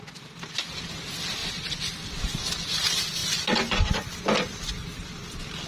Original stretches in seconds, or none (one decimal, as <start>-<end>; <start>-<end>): 0.0-5.7